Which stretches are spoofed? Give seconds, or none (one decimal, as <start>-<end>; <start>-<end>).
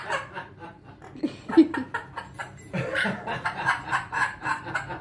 0.0-0.8; 2.4-4.6